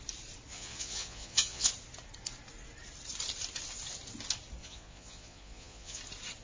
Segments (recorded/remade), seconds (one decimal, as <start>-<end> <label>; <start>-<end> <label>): 0.0-0.5 recorded; 0.5-1.7 remade; 1.7-4.6 recorded; 4.6-6.0 remade; 6.0-6.4 recorded